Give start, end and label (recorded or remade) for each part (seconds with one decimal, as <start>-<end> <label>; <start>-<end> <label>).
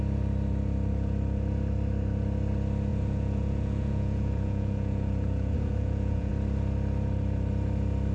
0.0-2.9 recorded; 2.9-6.3 remade; 6.3-8.1 recorded